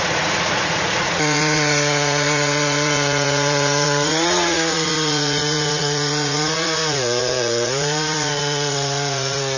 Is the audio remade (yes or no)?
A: yes